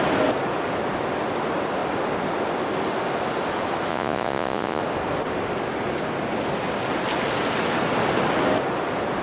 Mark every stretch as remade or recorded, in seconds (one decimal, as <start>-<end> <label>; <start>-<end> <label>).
0.0-3.9 recorded; 3.9-4.8 remade; 4.8-9.2 recorded